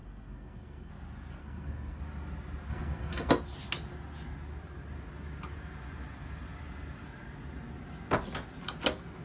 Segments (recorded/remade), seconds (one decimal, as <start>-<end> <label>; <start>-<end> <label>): 0.0-0.9 remade; 0.9-1.4 recorded; 1.4-2.0 remade; 2.0-2.7 recorded; 2.7-3.3 remade; 3.3-9.2 recorded